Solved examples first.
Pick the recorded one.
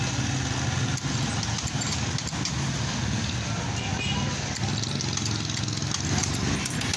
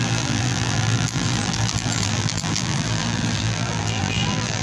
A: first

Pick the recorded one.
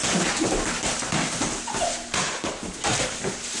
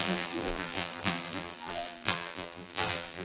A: first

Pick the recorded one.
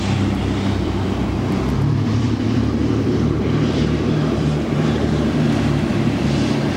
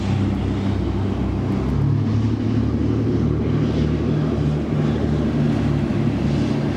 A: second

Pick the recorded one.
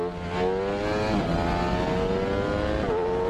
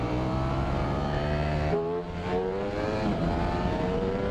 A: first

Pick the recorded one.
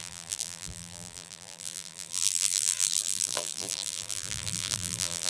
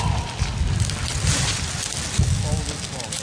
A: second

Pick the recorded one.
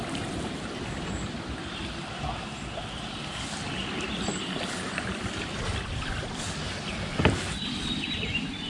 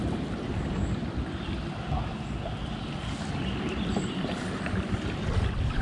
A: second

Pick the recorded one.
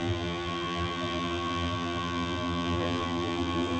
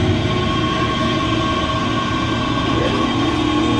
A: second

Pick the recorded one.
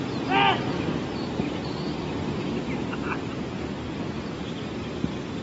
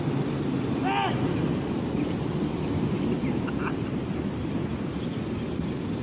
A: first